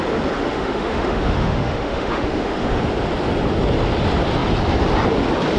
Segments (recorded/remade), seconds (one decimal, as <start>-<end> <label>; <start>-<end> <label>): 0.0-0.4 recorded; 0.4-2.8 remade; 2.8-5.6 recorded